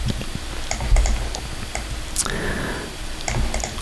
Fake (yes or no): no